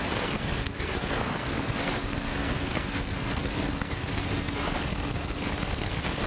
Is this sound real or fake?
fake